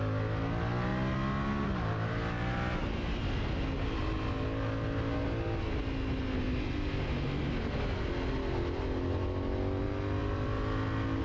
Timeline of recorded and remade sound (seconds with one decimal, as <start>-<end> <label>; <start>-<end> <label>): 0.0-11.2 recorded

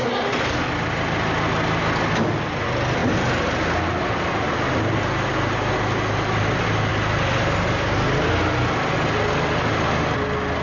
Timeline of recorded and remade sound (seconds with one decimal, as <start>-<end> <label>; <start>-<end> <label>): 0.0-10.6 recorded

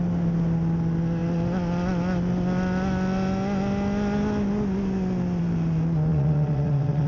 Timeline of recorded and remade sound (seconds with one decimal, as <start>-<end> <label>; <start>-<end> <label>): 0.0-6.1 recorded; 6.1-7.1 remade

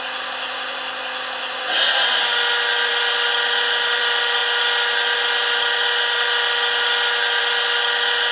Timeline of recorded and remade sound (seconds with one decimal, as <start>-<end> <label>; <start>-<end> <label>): 0.0-8.3 recorded

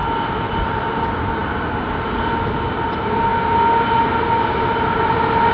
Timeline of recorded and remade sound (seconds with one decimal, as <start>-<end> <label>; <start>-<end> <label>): 0.0-5.5 recorded